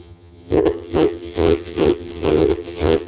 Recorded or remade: remade